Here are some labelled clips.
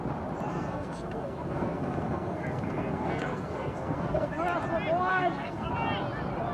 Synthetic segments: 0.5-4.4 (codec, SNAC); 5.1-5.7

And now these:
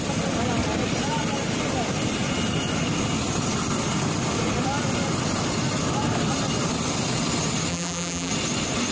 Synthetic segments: 7.7-8.3 (vocoder, BigVGAN v2)

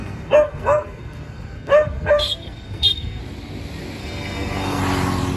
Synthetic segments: 0.0-3.2 (codec, SNAC); 4.0-4.8

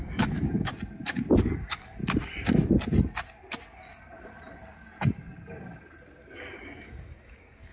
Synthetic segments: 0.0-0.7 (codec, DAC); 1.4-2.0; 6.6-7.7